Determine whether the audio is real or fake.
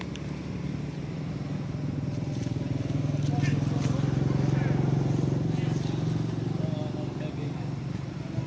real